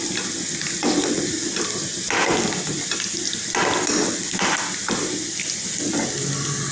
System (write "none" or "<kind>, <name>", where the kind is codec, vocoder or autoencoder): none